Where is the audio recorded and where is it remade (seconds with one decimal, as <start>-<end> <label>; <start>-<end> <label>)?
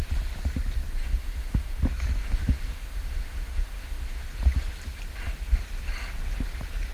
0.0-1.0 recorded; 1.0-1.8 remade; 1.8-2.2 recorded; 2.2-4.2 remade; 4.2-6.9 recorded